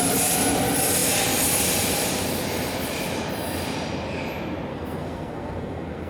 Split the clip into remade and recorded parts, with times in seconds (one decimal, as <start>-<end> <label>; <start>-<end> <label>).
0.0-4.7 recorded; 4.7-6.1 remade